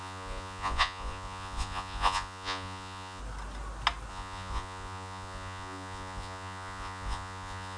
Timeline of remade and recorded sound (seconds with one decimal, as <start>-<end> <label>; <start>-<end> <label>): 0.0-3.2 remade; 3.2-4.1 recorded; 4.1-7.8 remade